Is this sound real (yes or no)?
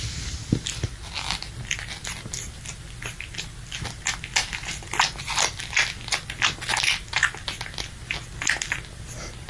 yes